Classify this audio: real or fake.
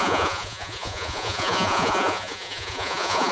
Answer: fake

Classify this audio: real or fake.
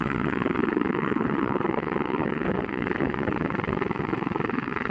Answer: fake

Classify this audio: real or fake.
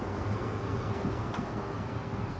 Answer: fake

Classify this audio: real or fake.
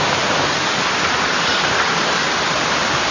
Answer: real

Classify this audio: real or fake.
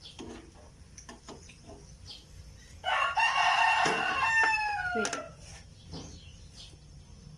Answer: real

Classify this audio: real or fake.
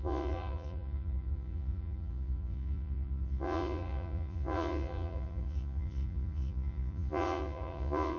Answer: fake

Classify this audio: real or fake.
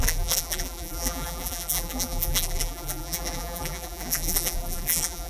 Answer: fake